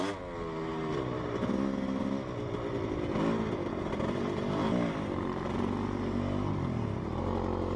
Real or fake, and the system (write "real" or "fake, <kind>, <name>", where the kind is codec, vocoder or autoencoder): real